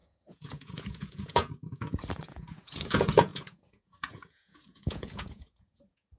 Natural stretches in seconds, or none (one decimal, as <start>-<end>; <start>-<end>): none